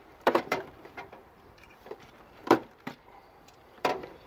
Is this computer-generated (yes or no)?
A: yes